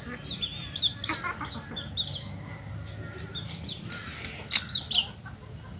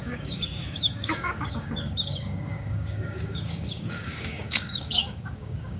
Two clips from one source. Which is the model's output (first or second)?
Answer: second